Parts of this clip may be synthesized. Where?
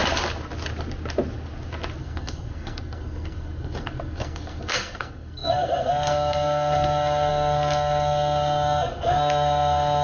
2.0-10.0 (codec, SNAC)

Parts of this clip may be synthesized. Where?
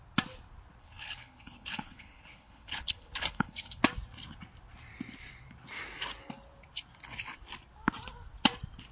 0.8-3.8 (codec, HILCodec)